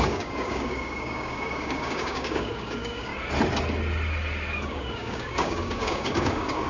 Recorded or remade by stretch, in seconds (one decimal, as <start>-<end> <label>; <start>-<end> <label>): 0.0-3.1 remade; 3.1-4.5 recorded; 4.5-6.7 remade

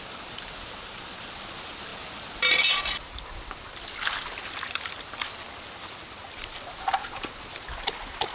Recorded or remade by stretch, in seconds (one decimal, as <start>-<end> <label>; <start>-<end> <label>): 0.0-8.3 recorded

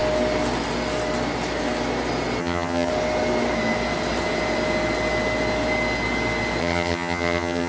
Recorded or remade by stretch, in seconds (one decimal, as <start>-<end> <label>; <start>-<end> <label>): 0.0-2.4 recorded; 2.4-2.9 remade; 2.9-6.6 recorded; 6.6-7.7 remade

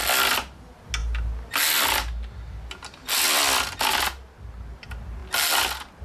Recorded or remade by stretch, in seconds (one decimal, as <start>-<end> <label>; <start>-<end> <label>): 0.0-6.0 recorded